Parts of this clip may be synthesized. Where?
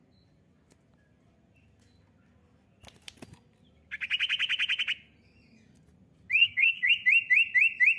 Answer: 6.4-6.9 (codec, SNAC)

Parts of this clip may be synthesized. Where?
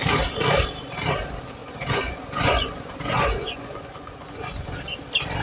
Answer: 1.6-4.8 (vocoder, Vocos)